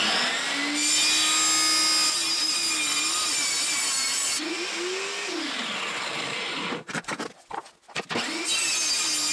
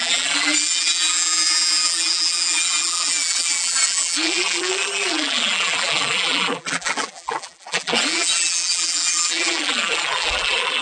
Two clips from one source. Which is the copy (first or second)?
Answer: second